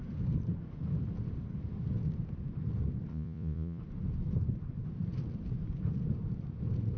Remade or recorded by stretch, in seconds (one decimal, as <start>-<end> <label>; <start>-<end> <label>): 0.0-3.1 recorded; 3.1-3.8 remade; 3.8-7.0 recorded